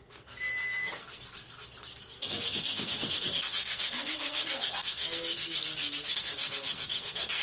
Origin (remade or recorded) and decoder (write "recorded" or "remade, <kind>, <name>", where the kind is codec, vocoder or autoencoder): remade, codec, SNAC